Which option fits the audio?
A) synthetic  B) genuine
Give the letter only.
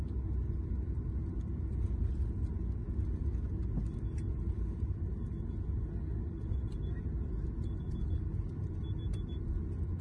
B